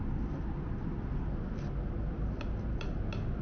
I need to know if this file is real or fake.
real